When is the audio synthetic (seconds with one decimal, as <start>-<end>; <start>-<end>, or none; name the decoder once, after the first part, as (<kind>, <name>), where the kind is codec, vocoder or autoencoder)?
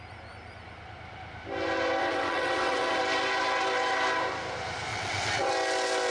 2.0-3.0 (vocoder, WaveNeXt); 4.9-5.5